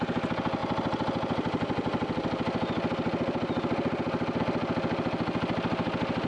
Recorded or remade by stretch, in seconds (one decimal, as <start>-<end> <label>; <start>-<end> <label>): 0.0-6.3 recorded